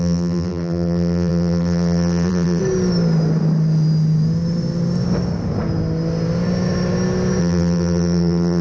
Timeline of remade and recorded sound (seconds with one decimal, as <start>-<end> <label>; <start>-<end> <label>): 0.0-2.6 remade; 2.6-7.4 recorded; 7.4-8.6 remade